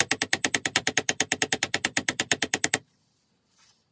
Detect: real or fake fake